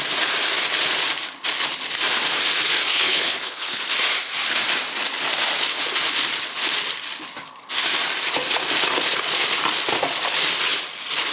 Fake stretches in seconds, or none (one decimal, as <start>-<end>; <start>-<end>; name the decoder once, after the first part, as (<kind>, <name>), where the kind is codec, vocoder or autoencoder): 2.9-3.8 (codec, HILCodec)